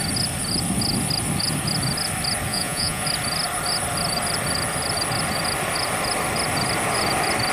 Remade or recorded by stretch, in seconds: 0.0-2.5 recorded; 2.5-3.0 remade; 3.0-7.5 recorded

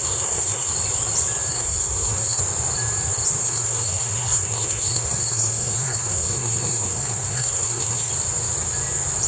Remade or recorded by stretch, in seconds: 0.0-0.7 remade; 0.7-1.5 recorded; 1.5-2.4 remade; 2.4-3.4 recorded; 3.4-8.1 remade; 8.1-9.3 recorded

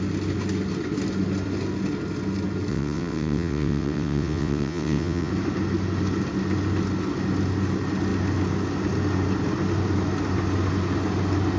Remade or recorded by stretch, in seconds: 0.0-2.7 recorded; 2.7-5.3 remade; 5.3-11.6 recorded

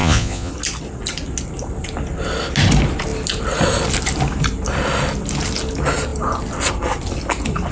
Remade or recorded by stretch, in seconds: 0.0-0.5 remade; 0.5-7.7 recorded

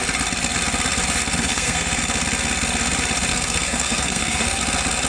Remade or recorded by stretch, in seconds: 0.0-1.5 recorded; 1.5-2.0 remade; 2.0-3.3 recorded; 3.3-4.6 remade; 4.6-5.1 recorded